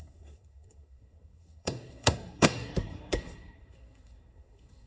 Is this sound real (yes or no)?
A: no